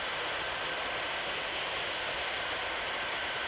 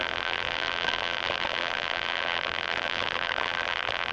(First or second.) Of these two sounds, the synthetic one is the second